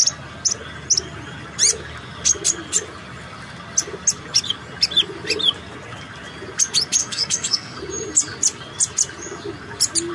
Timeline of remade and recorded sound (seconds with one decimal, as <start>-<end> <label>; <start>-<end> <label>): 0.0-7.0 recorded; 7.0-7.8 remade; 7.8-10.1 recorded